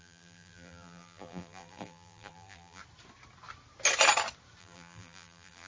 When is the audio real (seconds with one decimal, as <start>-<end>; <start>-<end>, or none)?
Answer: 2.8-4.6